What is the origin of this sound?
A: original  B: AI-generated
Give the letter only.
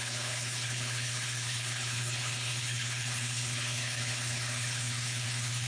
B